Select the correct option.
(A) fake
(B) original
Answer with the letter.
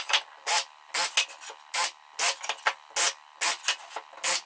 B